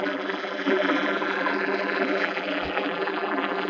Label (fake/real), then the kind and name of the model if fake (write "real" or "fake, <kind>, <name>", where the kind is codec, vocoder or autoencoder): fake, vocoder, BigVGAN v2